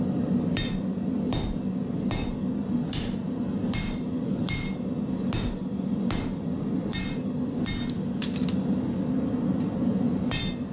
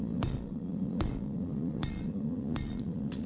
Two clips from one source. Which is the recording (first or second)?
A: first